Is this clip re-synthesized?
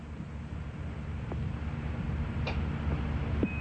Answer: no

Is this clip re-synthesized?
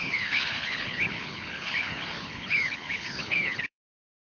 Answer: yes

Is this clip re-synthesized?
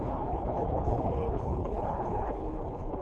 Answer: yes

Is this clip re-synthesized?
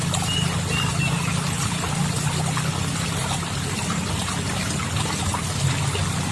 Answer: no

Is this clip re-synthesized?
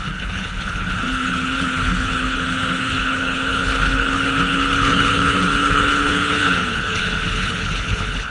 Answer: yes